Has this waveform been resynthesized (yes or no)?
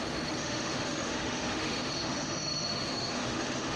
yes